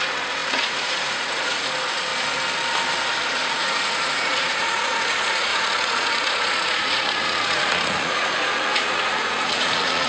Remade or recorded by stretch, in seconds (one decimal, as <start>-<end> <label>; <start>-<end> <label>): 0.0-2.1 remade; 2.1-3.3 recorded; 3.3-10.1 remade